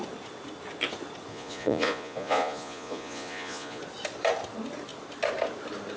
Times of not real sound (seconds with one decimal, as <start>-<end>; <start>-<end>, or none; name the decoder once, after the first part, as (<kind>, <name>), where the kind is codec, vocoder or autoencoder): 1.3-3.8 (vocoder, Vocos)